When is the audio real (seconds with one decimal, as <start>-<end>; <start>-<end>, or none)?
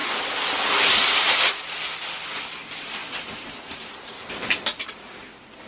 0.0-3.0; 4.3-5.7